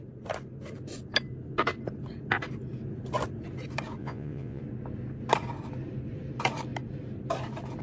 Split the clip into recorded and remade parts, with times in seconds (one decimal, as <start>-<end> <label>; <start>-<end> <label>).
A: 0.0-4.0 recorded; 4.0-4.6 remade; 4.6-7.8 recorded